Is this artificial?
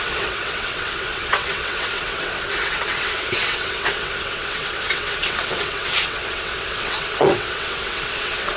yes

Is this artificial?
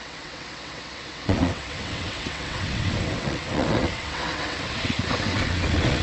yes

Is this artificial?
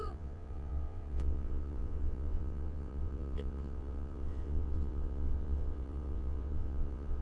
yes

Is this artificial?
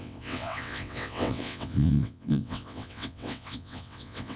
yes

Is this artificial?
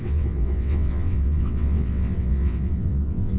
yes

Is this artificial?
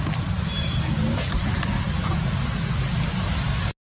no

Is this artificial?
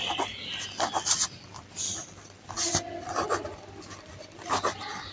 no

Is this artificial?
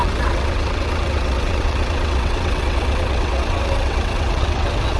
yes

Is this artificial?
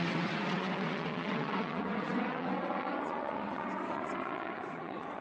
yes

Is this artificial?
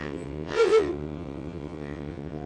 yes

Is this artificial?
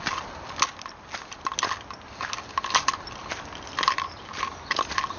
no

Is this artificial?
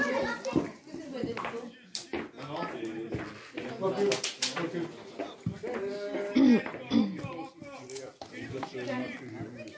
no